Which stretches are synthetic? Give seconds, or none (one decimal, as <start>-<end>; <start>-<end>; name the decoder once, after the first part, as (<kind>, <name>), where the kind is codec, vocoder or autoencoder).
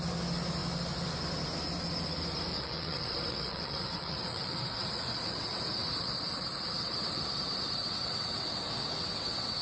2.5-7.2 (vocoder, WaveNeXt); 7.8-9.6